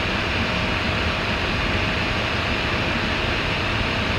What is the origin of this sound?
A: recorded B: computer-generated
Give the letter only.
A